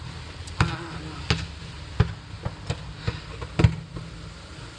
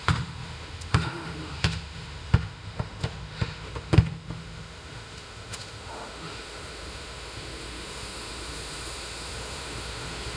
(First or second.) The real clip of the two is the first